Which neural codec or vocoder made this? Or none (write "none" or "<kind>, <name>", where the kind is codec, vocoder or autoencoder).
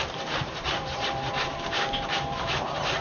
vocoder, BigVGAN v2